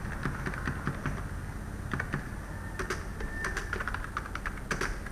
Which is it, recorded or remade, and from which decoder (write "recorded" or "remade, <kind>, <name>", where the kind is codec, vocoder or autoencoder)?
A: recorded